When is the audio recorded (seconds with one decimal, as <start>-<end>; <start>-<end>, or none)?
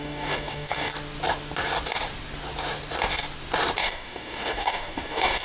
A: 0.9-3.8